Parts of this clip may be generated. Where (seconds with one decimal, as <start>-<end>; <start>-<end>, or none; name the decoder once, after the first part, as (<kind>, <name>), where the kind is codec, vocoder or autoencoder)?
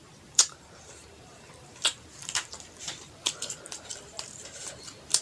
0.0-5.2 (vocoder, BigVGAN v2)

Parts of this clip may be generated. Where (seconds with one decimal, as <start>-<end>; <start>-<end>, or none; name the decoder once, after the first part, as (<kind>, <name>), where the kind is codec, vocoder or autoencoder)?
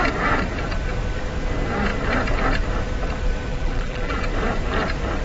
3.5-4.2 (vocoder, BigVGAN v2)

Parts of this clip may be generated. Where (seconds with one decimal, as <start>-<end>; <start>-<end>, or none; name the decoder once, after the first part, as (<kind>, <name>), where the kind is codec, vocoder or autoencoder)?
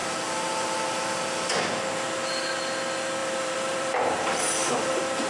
0.0-1.0 (vocoder, BigVGAN v2); 3.2-5.3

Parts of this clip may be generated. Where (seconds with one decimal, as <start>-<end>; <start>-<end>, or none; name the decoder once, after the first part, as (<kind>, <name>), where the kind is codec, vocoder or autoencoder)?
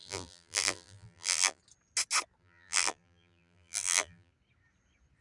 0.0-1.6 (vocoder, BigVGAN v2); 2.4-4.3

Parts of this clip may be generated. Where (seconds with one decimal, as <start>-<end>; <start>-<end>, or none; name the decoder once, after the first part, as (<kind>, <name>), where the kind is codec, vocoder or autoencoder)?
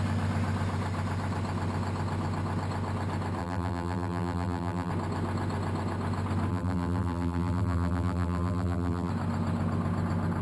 3.4-4.9 (vocoder, BigVGAN v2); 6.5-9.1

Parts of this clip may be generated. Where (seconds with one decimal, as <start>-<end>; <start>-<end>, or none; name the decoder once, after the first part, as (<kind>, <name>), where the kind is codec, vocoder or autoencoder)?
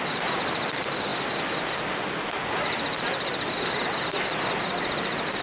none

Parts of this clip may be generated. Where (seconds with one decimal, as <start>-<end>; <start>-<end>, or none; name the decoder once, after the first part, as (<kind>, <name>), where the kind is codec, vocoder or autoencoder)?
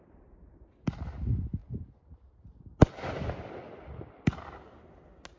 none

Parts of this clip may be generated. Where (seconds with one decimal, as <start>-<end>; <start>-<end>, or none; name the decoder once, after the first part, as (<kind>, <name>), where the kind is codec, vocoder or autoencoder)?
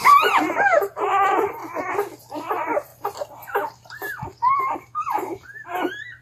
0.0-1.6 (vocoder, BigVGAN v2); 2.2-2.9; 4.5-6.2